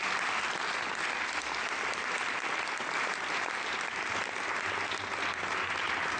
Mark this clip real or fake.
real